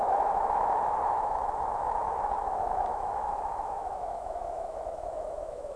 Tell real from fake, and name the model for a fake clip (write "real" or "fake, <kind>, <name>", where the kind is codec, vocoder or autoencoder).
fake, autoencoder, DAC-VAE